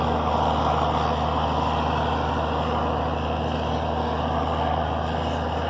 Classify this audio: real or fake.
real